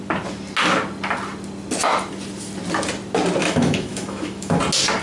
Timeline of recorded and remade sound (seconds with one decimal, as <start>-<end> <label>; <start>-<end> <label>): 0.0-3.4 recorded; 3.4-4.6 remade; 4.6-5.0 recorded